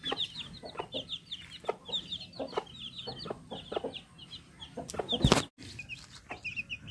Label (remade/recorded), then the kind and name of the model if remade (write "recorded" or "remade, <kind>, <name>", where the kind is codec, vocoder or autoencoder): recorded